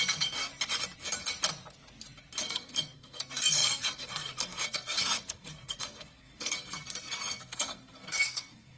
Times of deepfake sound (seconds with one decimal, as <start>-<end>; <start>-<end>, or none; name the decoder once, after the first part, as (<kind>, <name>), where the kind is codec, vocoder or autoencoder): 0.0-0.5 (codec, SNAC); 2.4-8.8